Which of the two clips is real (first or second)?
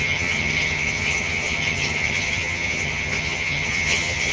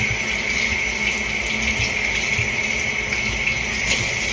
second